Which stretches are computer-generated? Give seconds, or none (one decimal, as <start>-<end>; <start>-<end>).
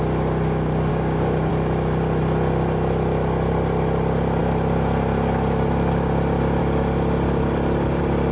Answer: 0.9-1.5